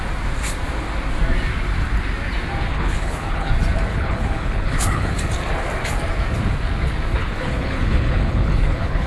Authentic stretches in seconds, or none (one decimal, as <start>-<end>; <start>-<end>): 0.0-2.7; 3.5-3.9; 5.1-7.2